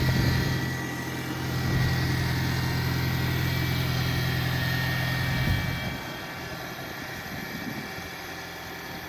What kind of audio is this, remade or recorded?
recorded